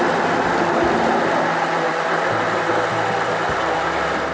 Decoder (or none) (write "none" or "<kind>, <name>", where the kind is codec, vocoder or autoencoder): none